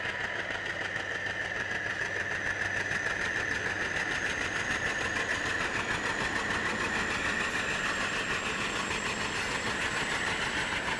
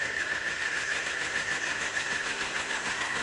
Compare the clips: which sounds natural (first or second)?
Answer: first